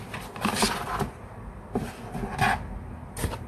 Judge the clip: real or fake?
real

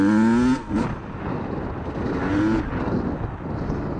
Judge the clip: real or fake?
real